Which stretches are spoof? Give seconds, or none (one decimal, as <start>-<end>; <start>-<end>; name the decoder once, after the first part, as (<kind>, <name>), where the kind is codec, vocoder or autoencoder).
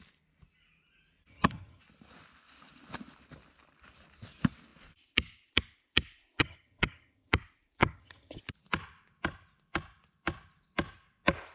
1.3-1.8 (vocoder, HiFi-GAN); 6.4-7.3; 7.8-8.4